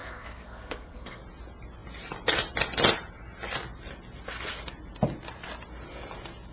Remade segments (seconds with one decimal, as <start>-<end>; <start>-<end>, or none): 0.0-1.2

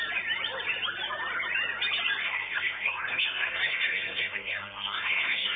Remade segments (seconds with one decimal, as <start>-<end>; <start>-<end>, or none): 2.2-5.6

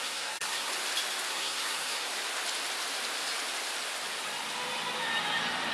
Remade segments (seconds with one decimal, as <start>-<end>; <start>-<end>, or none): 0.0-0.7; 1.3-2.1

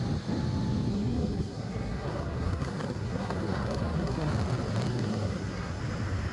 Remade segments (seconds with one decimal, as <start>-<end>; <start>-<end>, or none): 0.9-4.3; 4.9-5.8

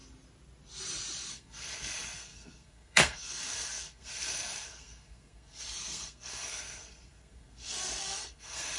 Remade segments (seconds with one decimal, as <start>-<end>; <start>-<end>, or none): 1.3-8.8